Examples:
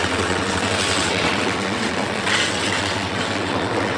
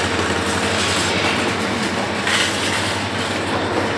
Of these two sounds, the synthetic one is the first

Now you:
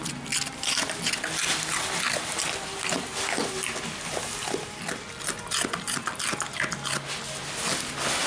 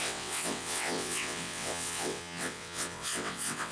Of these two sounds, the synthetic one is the second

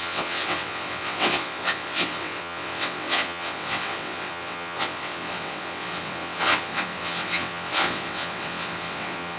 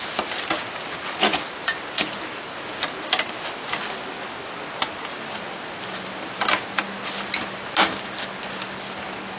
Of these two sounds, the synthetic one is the first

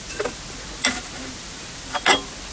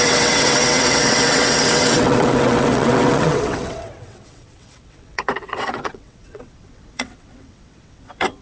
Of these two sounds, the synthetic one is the second